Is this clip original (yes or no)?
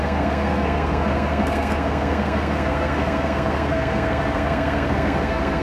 no